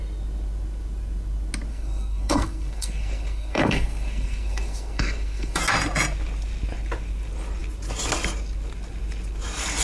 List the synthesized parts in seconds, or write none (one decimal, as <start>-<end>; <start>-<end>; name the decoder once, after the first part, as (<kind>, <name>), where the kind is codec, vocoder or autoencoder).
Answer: 1.7-5.6 (codec, SNAC)